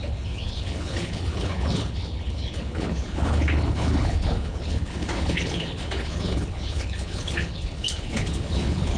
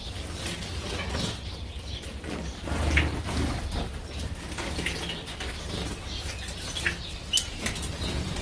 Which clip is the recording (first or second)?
second